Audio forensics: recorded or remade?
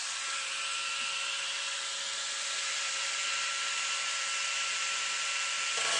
remade